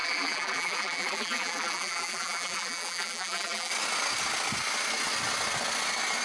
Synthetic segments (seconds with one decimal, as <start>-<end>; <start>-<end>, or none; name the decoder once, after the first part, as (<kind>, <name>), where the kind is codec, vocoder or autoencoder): 0.0-3.7 (vocoder, BigVGAN v2)

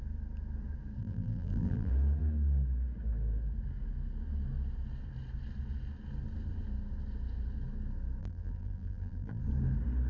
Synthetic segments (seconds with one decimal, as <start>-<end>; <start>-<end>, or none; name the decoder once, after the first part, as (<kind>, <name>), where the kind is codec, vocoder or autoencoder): 1.0-1.9 (vocoder, BigVGAN v2); 8.2-9.4

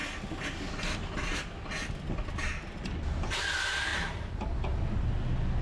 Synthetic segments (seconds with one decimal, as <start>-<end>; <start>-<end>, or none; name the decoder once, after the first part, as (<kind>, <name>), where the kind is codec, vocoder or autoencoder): 3.9-4.5 (vocoder, BigVGAN v2)

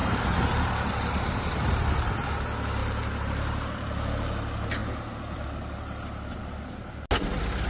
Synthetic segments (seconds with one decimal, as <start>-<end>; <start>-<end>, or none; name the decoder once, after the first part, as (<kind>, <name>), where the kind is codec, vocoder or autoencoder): 0.0-2.1 (vocoder, BigVGAN v2); 2.8-4.1

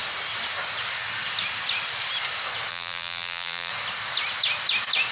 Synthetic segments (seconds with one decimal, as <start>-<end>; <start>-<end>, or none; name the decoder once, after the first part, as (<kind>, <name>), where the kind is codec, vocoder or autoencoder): 2.7-3.7 (vocoder, BigVGAN v2)